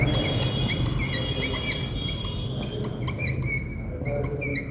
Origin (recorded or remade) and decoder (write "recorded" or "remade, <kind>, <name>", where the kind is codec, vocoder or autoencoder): recorded